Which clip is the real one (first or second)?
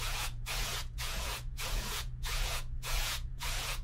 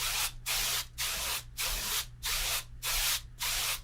second